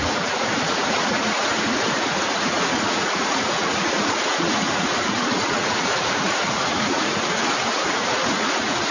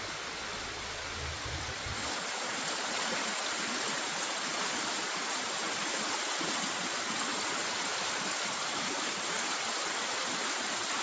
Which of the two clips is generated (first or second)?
first